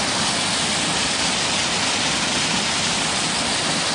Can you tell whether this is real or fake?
real